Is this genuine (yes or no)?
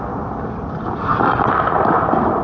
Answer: yes